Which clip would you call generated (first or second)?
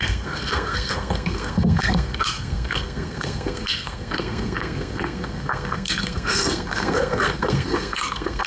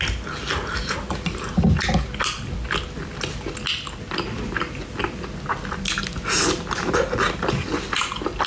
first